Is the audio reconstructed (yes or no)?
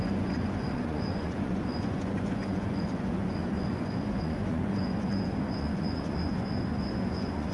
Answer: yes